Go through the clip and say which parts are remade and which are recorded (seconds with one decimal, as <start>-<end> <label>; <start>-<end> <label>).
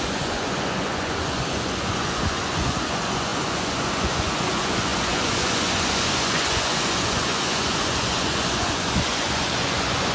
0.0-10.1 remade